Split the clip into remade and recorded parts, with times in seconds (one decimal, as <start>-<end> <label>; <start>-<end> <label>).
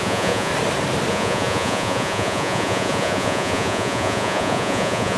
0.0-0.5 remade; 0.5-1.1 recorded; 1.1-5.2 remade